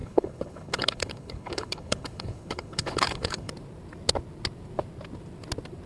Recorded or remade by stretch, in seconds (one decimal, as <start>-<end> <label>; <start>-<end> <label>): 0.0-3.5 remade; 3.5-5.9 recorded